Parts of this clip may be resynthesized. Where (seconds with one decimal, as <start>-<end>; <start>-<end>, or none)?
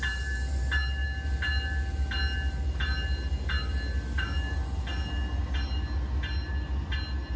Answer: none